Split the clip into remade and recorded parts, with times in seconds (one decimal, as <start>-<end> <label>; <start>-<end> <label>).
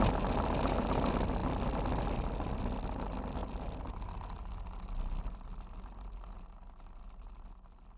0.0-8.0 recorded